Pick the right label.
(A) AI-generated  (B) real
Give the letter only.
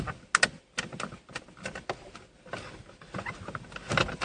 B